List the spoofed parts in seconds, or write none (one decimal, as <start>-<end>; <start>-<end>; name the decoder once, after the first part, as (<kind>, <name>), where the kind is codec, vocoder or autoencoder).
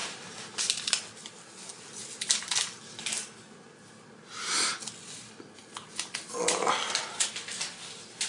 none